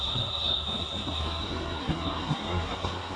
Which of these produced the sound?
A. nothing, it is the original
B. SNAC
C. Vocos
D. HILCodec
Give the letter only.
B